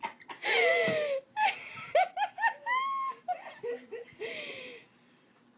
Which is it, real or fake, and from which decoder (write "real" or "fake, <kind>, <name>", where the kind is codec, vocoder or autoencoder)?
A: real